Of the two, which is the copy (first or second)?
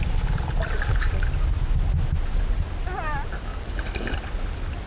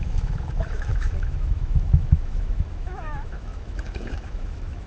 second